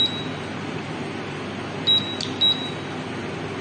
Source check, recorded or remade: recorded